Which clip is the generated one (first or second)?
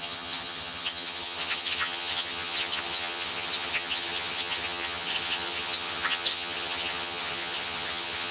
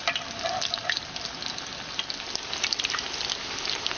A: first